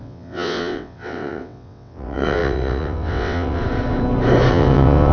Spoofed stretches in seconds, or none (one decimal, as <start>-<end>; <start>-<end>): 0.0-3.6; 4.5-5.1